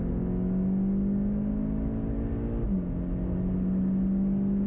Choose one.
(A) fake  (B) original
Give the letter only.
B